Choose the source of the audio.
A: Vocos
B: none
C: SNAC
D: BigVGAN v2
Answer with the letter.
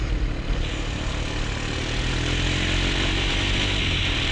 B